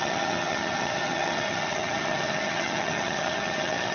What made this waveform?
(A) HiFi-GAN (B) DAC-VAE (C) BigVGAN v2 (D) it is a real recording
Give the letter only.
A